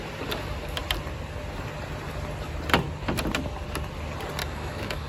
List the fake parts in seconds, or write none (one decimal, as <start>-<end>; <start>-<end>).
4.4-5.1